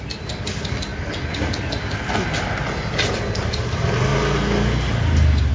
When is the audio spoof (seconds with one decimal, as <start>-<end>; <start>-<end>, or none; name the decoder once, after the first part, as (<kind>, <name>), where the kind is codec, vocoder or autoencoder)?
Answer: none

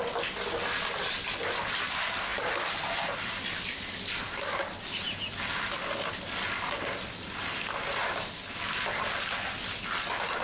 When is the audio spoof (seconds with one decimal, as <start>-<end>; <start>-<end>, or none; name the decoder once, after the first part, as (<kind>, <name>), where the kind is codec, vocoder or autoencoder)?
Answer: none

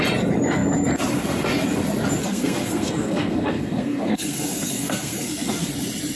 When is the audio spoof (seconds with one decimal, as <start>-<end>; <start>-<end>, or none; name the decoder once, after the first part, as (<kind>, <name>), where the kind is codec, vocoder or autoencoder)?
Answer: 2.2-5.7 (codec, SNAC)

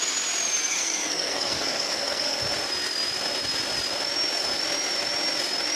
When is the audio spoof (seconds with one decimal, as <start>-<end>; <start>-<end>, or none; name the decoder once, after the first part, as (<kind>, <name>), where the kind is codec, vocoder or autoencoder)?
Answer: 0.7-2.4 (codec, SNAC)

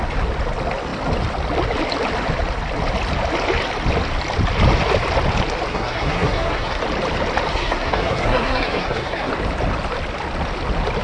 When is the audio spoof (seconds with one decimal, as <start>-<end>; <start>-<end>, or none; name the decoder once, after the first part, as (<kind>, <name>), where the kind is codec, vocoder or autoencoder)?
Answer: 5.7-6.8 (codec, SNAC); 7.5-9.3